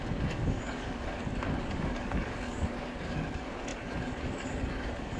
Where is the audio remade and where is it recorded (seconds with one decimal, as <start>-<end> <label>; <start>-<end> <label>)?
0.0-5.2 remade